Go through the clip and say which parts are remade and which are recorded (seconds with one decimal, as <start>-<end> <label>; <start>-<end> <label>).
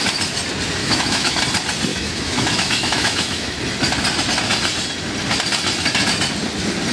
0.0-0.8 recorded; 0.8-1.4 remade; 1.4-1.9 recorded; 1.9-3.6 remade; 3.6-6.9 recorded